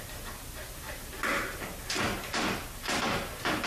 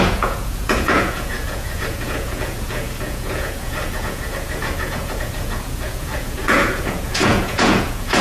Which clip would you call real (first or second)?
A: first